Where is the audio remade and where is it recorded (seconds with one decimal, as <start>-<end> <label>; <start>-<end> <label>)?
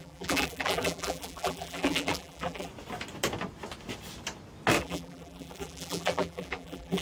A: 0.0-2.7 remade; 2.7-4.8 recorded; 4.8-7.0 remade